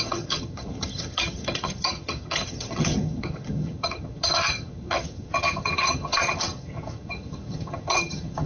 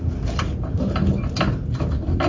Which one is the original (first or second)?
second